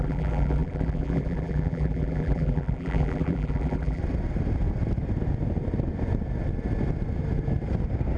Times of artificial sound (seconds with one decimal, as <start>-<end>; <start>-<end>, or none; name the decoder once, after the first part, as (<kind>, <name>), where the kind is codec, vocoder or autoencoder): 0.0-4.0 (vocoder, BigVGAN v2)